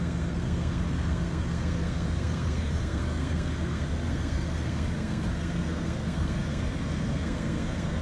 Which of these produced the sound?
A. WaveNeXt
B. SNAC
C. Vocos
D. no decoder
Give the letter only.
B